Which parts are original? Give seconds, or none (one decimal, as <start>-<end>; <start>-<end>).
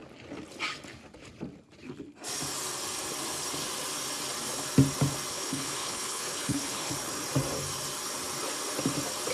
0.0-5.3; 6.9-9.3